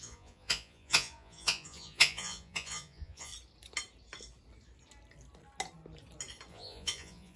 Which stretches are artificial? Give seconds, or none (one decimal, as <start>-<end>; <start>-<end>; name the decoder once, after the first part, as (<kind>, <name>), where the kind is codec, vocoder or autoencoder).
0.0-3.3 (vocoder, Vocos); 6.5-7.4